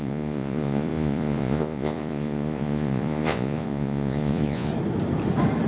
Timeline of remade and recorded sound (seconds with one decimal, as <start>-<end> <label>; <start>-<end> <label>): 0.0-4.7 remade; 4.7-5.7 recorded